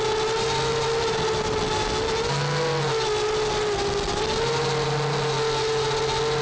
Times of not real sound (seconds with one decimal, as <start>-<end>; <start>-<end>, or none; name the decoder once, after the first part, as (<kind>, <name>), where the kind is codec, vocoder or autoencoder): none